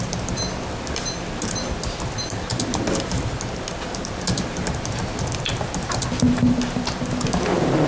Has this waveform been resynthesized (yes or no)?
no